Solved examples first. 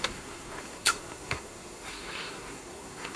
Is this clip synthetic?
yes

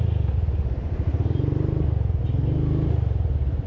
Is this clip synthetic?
no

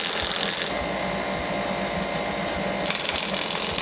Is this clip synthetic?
no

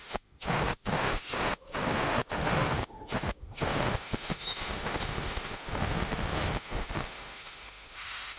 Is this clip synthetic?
yes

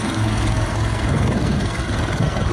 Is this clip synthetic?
yes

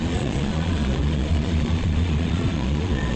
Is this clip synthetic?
yes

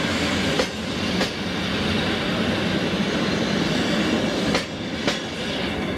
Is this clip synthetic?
no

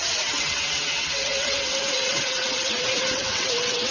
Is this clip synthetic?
yes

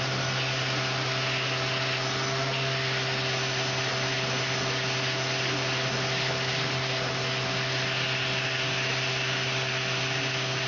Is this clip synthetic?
no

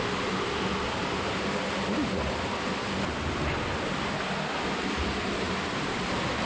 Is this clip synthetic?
no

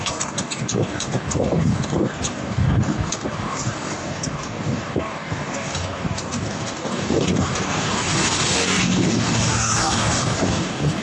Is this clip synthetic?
yes